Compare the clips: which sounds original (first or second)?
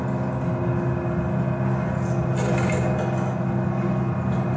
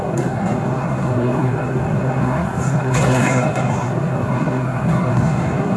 first